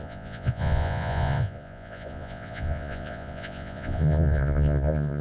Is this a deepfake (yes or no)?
yes